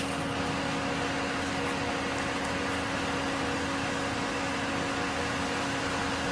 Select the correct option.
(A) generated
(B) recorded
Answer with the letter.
B